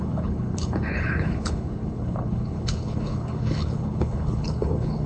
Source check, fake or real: fake